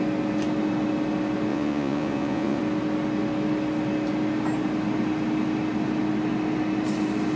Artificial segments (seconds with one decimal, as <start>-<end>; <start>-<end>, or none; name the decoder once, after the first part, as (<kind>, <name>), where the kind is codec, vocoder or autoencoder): 1.5-2.6 (vocoder, Vocos)